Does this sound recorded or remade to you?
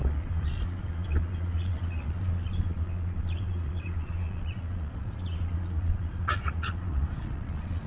remade